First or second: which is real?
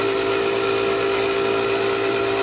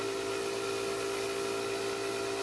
second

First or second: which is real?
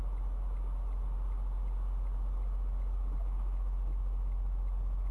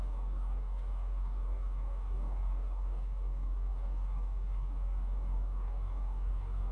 first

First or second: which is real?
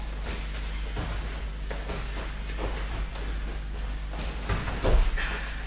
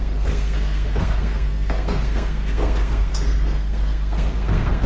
first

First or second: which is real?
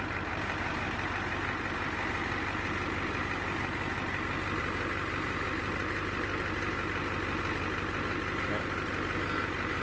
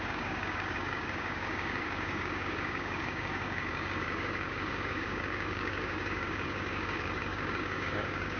first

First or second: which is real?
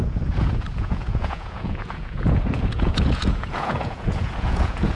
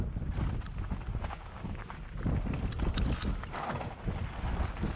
second